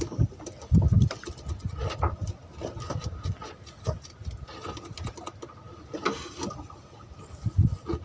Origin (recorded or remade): recorded